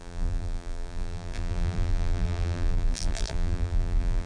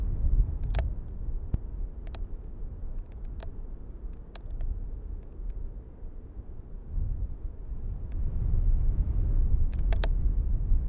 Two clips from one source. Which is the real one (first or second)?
second